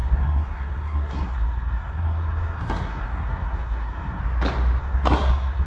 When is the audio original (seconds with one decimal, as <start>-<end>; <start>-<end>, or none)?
4.2-4.8